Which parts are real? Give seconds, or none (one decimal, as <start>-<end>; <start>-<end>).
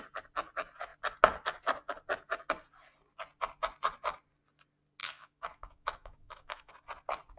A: 0.0-5.0; 6.7-7.4